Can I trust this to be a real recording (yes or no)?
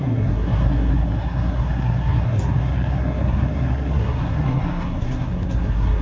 no